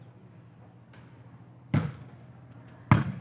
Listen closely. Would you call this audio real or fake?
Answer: real